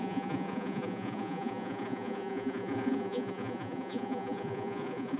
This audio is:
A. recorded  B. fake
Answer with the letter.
B